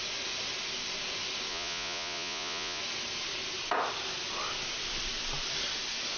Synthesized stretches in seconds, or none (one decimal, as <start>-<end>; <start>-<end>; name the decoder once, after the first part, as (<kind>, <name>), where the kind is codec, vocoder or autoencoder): 1.5-2.8 (vocoder, Vocos)

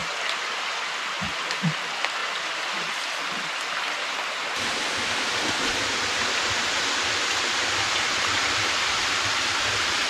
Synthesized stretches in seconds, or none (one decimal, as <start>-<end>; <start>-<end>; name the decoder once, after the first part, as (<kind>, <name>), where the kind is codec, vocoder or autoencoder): 2.2-3.7 (vocoder, BigVGAN v2)

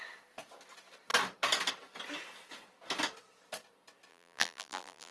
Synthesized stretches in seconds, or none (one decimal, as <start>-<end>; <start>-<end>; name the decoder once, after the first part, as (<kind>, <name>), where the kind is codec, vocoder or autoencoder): 4.1-5.1 (vocoder, BigVGAN v2)

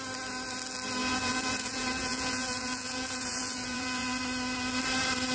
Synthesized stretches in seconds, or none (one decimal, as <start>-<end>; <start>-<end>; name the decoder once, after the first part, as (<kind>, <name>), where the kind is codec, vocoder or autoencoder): 1.0-4.2 (vocoder, Vocos)

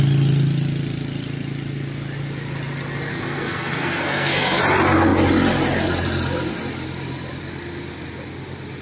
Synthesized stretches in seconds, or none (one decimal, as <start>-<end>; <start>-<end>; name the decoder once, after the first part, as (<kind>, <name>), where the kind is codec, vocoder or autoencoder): 3.1-4.6 (codec, SNAC)

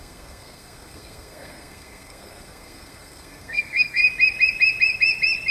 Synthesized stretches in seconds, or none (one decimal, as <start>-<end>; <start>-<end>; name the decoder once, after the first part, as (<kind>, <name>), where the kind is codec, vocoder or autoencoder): 0.0-4.0 (codec, SNAC)

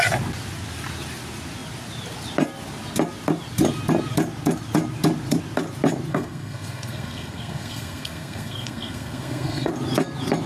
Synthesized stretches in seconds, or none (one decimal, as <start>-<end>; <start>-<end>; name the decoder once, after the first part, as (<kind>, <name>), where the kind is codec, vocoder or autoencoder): 6.1-9.7 (codec, SNAC)